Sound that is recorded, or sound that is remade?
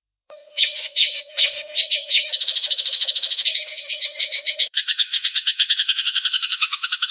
remade